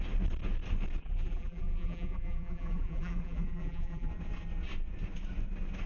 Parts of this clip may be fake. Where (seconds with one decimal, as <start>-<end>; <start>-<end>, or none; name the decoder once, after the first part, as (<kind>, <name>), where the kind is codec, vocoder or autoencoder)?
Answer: 1.0-4.1 (vocoder, BigVGAN v2)